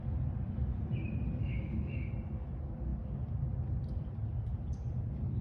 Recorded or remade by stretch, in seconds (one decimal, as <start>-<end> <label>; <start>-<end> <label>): 0.0-1.4 recorded; 1.4-2.1 remade; 2.1-5.4 recorded